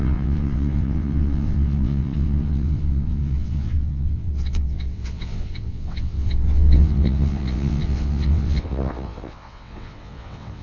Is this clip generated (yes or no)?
yes